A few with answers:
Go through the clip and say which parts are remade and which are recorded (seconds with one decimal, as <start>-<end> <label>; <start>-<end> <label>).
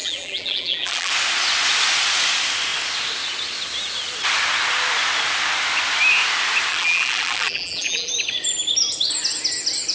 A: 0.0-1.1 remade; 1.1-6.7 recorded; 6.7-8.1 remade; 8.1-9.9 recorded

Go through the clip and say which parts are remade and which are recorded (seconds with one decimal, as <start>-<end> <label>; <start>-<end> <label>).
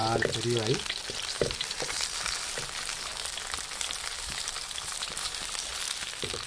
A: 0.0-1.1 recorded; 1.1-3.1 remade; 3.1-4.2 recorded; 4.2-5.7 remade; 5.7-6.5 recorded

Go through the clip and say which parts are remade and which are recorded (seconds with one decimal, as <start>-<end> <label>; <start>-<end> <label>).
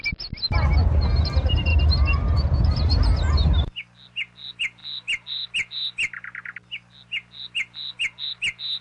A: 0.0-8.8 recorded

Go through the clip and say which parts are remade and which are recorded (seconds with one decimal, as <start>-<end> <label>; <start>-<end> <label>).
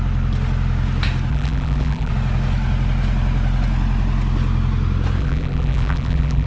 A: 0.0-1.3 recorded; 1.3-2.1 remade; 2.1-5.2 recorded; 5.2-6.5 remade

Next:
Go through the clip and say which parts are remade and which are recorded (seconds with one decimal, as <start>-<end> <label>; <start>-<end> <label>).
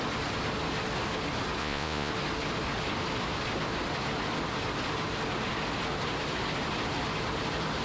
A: 0.0-1.6 recorded; 1.6-2.1 remade; 2.1-7.8 recorded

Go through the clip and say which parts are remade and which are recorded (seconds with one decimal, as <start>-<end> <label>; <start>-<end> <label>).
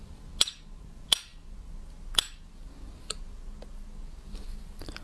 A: 0.0-5.0 recorded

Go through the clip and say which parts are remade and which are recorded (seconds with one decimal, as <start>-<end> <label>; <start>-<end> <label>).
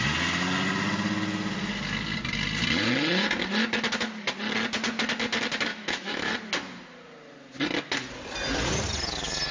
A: 0.0-5.7 recorded; 5.7-6.3 remade; 6.3-9.5 recorded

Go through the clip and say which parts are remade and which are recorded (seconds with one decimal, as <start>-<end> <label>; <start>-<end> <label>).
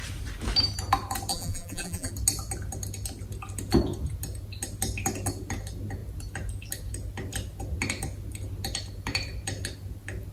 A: 0.0-1.3 recorded; 1.3-2.1 remade; 2.1-10.3 recorded